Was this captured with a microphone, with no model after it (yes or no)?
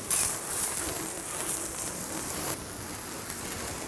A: yes